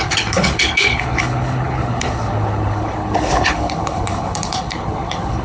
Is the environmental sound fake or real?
fake